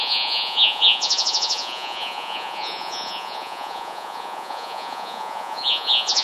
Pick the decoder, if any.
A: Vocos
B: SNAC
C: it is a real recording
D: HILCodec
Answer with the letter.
A